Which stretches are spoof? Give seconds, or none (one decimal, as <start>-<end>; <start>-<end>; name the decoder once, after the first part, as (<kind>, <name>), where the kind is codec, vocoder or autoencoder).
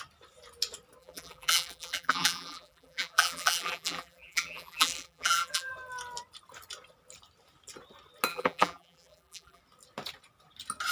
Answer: 1.0-5.7 (vocoder, BigVGAN v2); 8.3-9.6